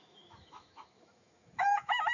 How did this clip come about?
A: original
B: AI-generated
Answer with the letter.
B